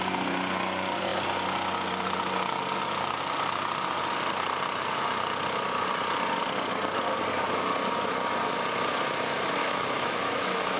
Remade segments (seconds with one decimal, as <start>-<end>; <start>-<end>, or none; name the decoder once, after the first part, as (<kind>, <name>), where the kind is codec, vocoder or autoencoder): 9.6-10.8 (autoencoder, DAC-VAE)